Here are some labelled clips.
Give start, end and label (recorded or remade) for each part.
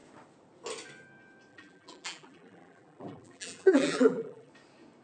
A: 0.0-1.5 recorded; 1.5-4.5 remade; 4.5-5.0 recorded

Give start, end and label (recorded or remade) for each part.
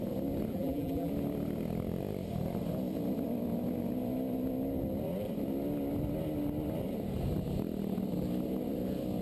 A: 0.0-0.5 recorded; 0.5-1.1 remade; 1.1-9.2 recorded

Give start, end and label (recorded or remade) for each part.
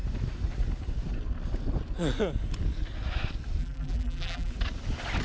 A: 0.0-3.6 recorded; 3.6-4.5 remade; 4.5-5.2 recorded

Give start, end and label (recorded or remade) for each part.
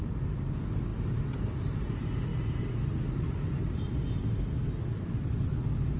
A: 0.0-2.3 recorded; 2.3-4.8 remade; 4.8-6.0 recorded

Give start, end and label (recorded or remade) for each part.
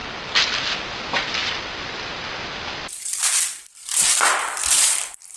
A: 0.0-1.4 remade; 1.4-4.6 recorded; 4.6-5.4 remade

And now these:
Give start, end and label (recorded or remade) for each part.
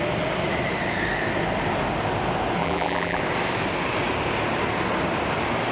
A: 0.0-2.6 recorded; 2.6-3.2 remade; 3.2-5.7 recorded